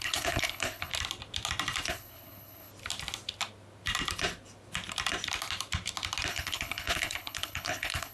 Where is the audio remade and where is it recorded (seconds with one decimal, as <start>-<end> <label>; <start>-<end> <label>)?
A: 0.0-0.9 remade; 0.9-1.9 recorded; 1.9-2.7 remade; 2.7-6.3 recorded; 6.3-8.1 remade